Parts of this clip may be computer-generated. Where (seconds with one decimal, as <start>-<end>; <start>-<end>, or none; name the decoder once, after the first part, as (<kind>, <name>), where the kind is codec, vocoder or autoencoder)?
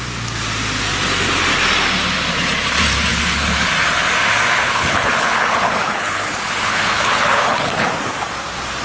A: 3.1-3.7 (codec, HILCodec); 4.5-7.9